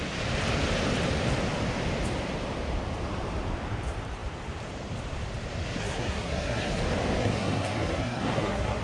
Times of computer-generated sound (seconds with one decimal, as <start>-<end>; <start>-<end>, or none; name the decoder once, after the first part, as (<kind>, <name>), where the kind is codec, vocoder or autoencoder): 5.8-6.8 (codec, SNAC); 7.2-8.8